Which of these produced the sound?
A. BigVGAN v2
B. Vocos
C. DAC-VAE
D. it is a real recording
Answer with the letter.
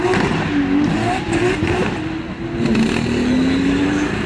D